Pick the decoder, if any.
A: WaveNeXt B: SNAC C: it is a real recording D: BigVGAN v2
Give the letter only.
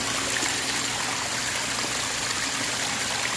C